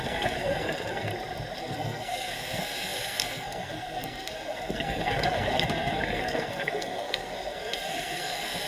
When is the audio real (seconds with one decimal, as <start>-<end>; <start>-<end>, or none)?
1.1-1.6